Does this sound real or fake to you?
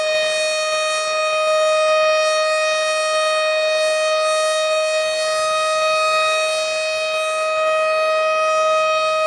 real